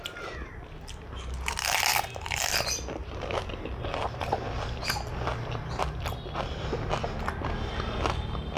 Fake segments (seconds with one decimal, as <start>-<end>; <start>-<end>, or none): 1.9-2.6; 3.0-6.9